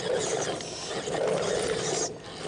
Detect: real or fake real